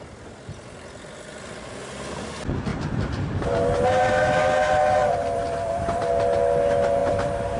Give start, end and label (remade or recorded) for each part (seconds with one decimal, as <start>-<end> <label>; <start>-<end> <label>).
0.0-2.7 recorded; 2.7-3.3 remade; 3.3-5.0 recorded; 5.0-6.1 remade; 6.1-7.0 recorded; 7.0-7.6 remade